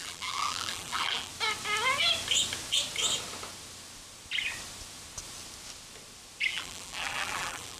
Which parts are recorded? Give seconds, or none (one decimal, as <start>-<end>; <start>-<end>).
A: 1.3-6.5